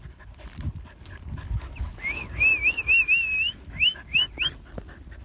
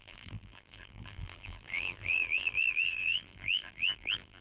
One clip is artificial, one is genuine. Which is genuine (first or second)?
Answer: first